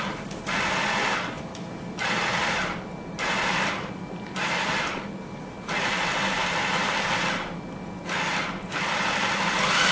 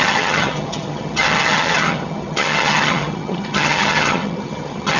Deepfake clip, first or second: second